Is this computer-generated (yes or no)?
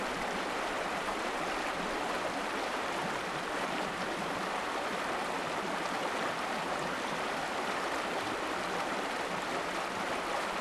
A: no